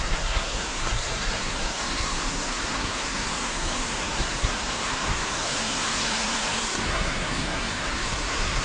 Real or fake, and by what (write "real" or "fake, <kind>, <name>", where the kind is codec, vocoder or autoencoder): fake, codec, SNAC